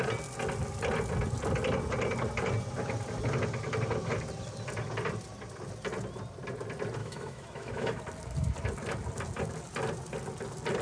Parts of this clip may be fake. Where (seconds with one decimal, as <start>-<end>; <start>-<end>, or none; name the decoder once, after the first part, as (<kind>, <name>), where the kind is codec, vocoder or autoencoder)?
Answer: 7.0-8.0 (autoencoder, DAC-VAE)